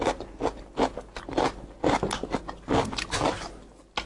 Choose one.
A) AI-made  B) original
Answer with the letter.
B